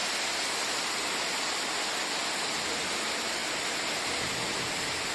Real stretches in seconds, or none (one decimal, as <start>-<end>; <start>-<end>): 0.0-5.1